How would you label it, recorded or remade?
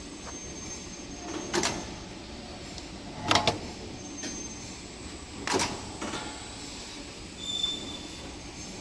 recorded